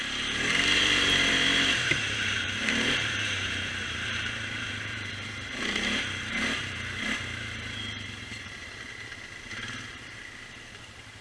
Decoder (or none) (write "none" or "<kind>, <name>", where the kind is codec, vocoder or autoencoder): vocoder, BigVGAN v2